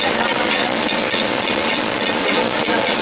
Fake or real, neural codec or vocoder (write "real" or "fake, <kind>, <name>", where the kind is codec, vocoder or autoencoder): fake, vocoder, Vocos